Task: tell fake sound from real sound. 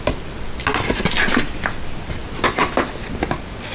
real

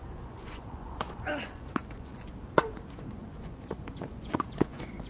fake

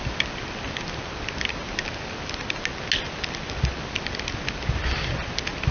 real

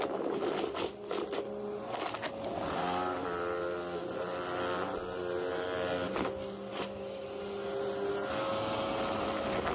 real